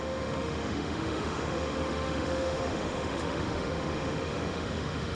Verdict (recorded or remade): remade